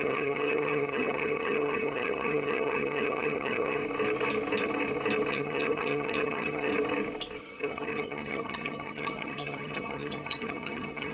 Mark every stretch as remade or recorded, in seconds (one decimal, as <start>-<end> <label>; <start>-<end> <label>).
0.0-3.8 remade; 3.8-5.3 recorded; 5.3-6.7 remade; 6.7-7.4 recorded; 7.4-11.1 remade